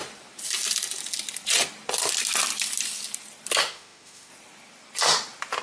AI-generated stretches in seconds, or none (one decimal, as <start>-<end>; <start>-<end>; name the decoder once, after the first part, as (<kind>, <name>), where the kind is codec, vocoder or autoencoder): 3.6-4.3 (autoencoder, DAC-VAE)